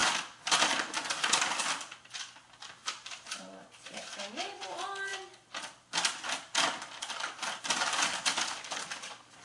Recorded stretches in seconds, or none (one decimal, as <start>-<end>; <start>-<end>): 0.0-9.4